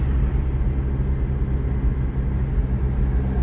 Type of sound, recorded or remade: recorded